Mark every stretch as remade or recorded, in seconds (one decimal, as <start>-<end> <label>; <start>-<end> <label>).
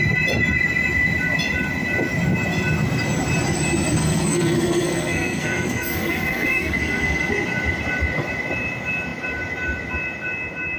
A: 0.0-4.0 recorded; 4.0-7.3 remade; 7.3-10.8 recorded